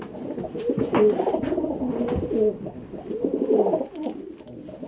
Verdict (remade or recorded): recorded